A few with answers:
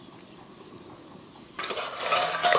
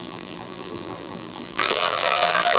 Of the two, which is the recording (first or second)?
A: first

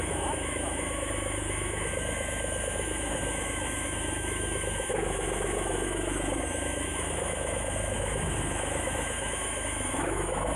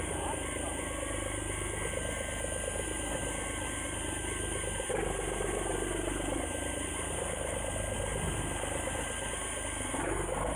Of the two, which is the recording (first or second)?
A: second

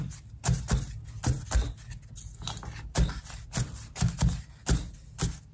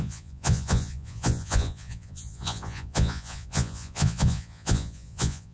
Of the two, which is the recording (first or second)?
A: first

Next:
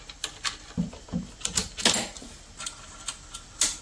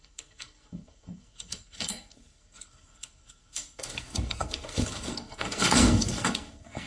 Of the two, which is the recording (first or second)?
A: first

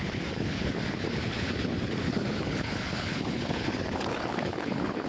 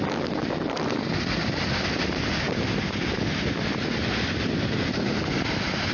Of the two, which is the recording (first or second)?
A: second